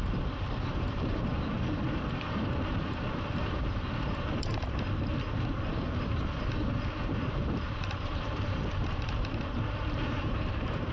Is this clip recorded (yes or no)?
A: no